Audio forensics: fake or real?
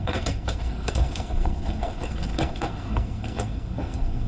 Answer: fake